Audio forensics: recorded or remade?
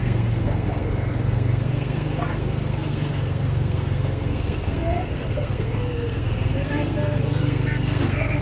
remade